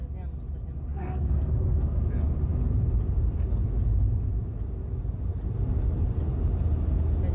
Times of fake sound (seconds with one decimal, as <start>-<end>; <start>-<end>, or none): 0.9-2.0